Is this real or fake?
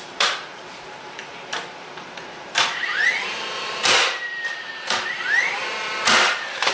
fake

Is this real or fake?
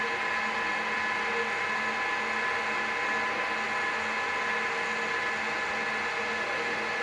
real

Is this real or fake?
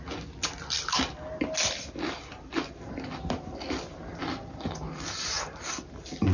real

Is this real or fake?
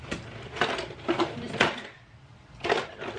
real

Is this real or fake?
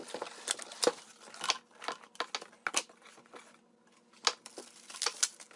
real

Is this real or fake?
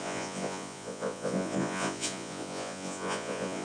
fake